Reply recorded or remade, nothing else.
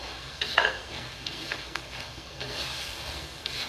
remade